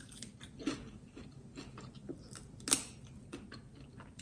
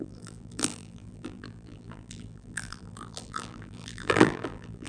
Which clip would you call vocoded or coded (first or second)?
second